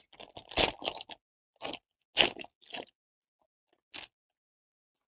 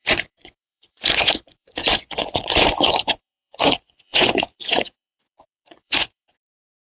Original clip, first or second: first